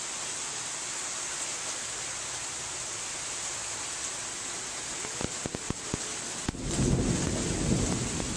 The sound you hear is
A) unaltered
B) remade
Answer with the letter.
A